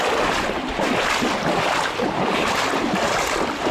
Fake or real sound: real